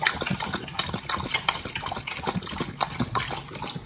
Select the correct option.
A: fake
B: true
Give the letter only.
B